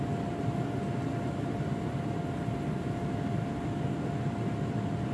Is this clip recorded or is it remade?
recorded